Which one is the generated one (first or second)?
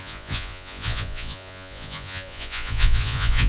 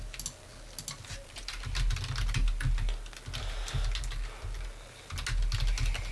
first